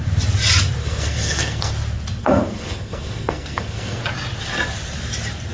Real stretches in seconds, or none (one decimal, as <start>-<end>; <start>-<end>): 0.0-0.8; 1.7-2.2; 4.0-5.5